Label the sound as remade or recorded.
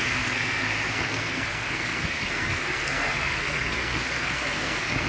remade